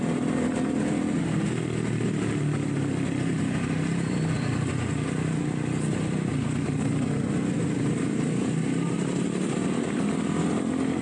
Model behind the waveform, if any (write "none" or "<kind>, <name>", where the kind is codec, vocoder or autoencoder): none